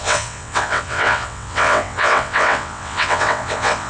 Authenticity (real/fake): fake